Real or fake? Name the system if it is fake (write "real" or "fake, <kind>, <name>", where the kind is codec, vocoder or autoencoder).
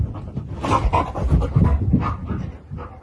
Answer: real